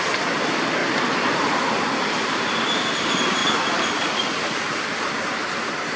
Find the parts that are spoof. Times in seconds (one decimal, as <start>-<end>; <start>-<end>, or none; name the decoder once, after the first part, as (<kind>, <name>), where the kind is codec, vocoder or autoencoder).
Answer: 0.0-0.8 (vocoder, BigVGAN v2); 1.4-3.4; 4.9-6.0